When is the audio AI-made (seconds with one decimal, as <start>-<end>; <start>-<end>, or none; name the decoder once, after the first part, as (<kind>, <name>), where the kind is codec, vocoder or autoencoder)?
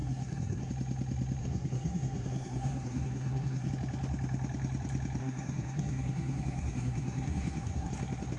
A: 0.0-0.7 (codec, SNAC); 1.4-3.7; 5.2-7.9